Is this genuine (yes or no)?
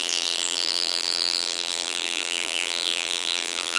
no